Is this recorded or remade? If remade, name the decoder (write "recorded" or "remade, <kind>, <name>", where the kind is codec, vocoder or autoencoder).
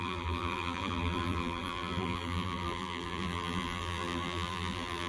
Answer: remade, vocoder, BigVGAN v2